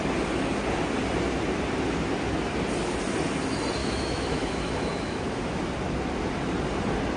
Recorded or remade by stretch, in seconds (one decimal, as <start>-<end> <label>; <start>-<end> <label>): 0.0-3.8 recorded; 3.8-5.6 remade; 5.6-7.2 recorded